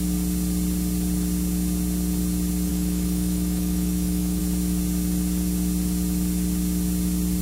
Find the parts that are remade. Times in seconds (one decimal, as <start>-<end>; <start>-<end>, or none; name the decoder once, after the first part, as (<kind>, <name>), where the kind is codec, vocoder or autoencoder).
2.7-4.4 (autoencoder, DAC-VAE)